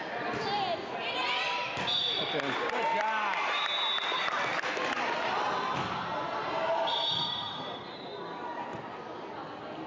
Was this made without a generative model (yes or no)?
yes